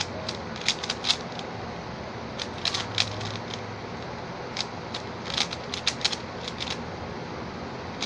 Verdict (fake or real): real